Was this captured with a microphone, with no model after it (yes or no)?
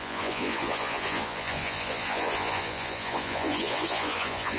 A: no